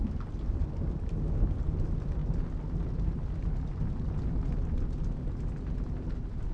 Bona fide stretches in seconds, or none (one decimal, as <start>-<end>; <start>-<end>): 0.0-6.5